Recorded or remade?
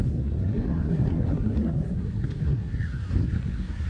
remade